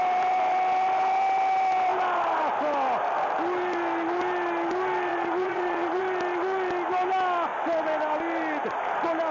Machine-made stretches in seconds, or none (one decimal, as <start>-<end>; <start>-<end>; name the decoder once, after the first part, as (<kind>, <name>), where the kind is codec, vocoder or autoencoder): 5.1-6.0 (vocoder, Vocos)